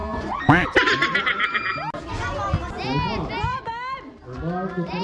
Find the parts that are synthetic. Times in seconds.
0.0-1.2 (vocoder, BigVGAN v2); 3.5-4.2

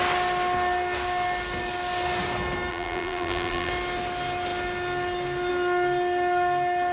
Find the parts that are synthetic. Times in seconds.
2.7-3.7 (vocoder, BigVGAN v2)

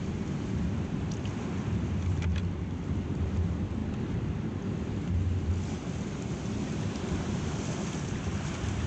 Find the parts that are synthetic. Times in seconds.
none

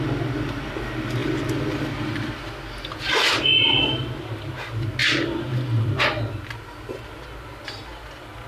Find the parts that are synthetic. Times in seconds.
1.2-2.4 (vocoder, BigVGAN v2); 3.5-4.1

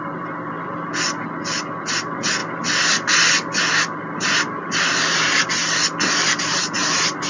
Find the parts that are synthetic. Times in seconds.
0.0-0.9 (vocoder, BigVGAN v2); 1.8-2.4; 3.6-5.6; 6.4-7.3

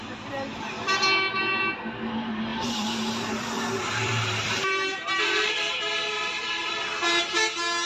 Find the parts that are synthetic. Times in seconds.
0.5-1.0 (vocoder, BigVGAN v2); 2.5-5.5; 6.6-7.2

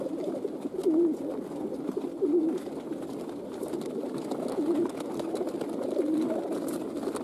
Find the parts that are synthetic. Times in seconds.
0.8-1.8 (vocoder, BigVGAN v2)